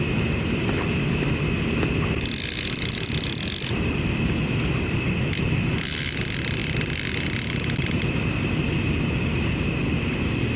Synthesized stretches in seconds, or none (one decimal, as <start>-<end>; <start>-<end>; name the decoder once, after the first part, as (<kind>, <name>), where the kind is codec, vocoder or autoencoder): none